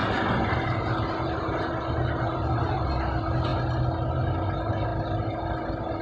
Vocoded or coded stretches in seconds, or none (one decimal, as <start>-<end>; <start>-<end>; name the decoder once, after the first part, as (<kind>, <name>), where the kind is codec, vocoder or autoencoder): none